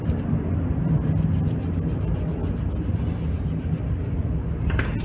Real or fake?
real